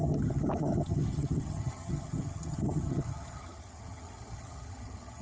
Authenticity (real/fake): fake